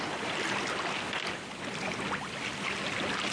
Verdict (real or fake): real